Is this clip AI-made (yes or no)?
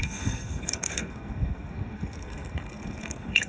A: yes